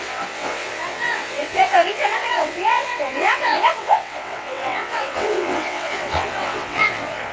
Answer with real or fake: fake